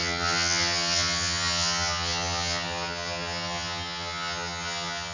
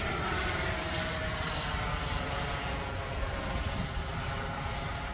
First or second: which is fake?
first